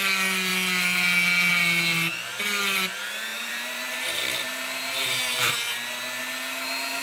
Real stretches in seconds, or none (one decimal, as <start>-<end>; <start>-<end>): 0.0-3.3; 5.5-7.0